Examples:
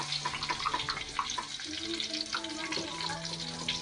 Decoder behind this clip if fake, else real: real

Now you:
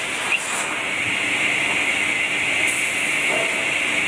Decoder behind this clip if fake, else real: real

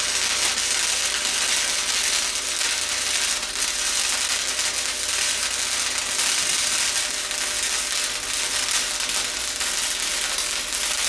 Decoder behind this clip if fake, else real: real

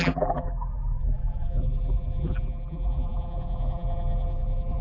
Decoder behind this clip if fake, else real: fake, vocoder, BigVGAN v2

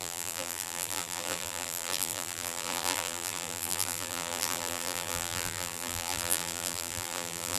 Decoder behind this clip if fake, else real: fake, vocoder, BigVGAN v2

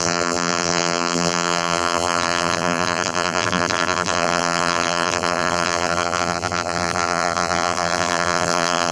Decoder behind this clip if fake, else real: fake, vocoder, BigVGAN v2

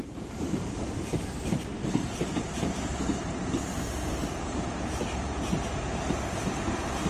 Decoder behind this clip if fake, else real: fake, vocoder, BigVGAN v2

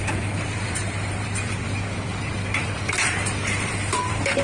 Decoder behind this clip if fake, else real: fake, vocoder, BigVGAN v2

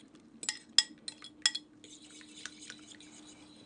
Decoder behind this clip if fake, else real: real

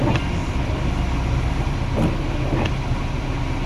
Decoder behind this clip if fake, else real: real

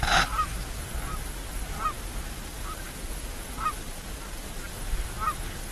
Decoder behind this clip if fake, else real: real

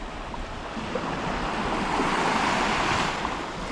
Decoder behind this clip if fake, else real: real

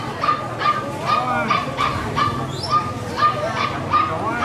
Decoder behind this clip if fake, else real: real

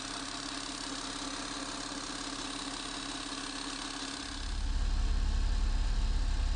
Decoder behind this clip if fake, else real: real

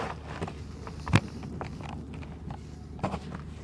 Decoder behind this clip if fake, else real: real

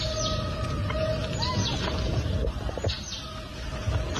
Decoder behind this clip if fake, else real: real